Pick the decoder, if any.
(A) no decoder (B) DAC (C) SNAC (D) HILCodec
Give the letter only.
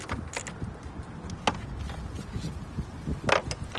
A